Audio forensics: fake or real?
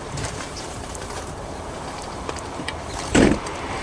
fake